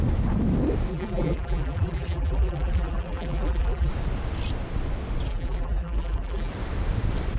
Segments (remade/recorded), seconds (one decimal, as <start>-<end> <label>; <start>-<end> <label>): 0.0-0.9 recorded; 0.9-3.9 remade; 3.9-5.3 recorded; 5.3-6.5 remade; 6.5-7.4 recorded